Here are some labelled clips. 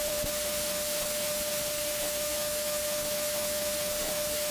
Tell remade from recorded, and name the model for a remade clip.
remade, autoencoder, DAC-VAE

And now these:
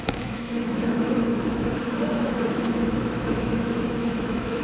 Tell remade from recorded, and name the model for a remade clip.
remade, autoencoder, DAC-VAE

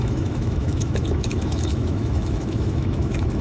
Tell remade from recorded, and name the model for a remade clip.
remade, autoencoder, DAC-VAE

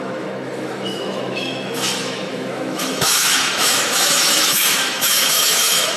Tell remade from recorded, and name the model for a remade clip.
remade, autoencoder, DAC-VAE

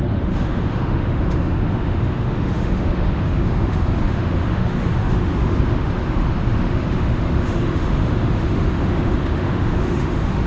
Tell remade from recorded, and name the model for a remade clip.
remade, autoencoder, DAC-VAE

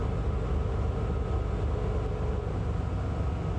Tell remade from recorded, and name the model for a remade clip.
recorded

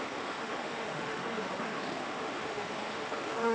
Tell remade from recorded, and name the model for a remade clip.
remade, autoencoder, DAC-VAE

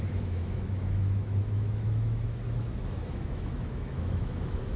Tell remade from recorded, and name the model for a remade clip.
remade, autoencoder, DAC-VAE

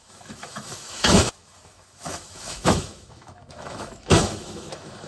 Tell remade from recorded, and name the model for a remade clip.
remade, autoencoder, DAC-VAE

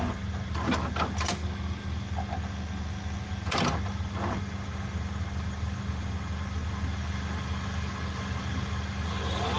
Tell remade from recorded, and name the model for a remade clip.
recorded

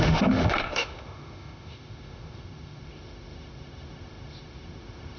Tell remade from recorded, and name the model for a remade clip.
remade, autoencoder, DAC-VAE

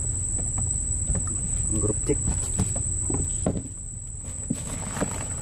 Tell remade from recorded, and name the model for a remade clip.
recorded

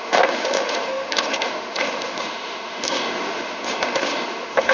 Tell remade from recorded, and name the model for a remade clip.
remade, autoencoder, DAC-VAE